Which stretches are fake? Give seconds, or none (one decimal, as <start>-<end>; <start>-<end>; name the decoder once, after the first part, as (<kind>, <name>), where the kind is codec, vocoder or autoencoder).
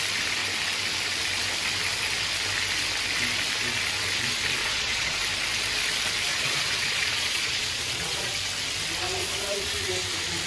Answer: 4.6-5.2 (vocoder, Vocos); 6.3-8.3; 9.2-9.9